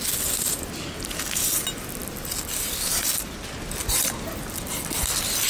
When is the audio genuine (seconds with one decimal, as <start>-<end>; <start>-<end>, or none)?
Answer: 0.0-5.5